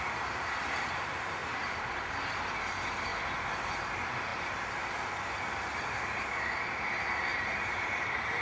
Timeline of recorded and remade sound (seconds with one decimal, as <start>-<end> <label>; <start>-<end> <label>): 0.0-1.4 recorded; 1.4-2.0 remade; 2.0-7.3 recorded; 7.3-7.9 remade; 7.9-8.4 recorded